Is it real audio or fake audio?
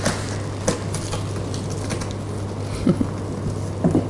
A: real